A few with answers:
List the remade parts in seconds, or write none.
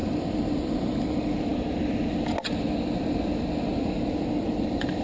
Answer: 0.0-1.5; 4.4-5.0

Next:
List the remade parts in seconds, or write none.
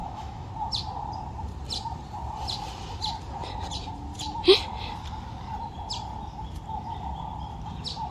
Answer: 0.0-0.5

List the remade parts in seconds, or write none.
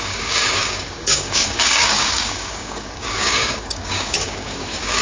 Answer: 0.0-5.0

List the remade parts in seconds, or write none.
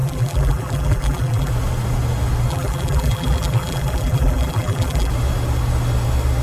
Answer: 0.0-1.5; 2.5-5.1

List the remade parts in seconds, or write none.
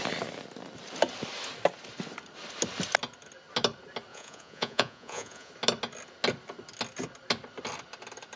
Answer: 4.1-5.5